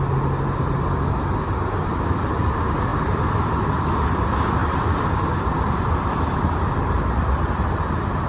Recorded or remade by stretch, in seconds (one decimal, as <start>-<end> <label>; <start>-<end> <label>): 0.0-4.6 recorded; 4.6-5.1 remade; 5.1-8.3 recorded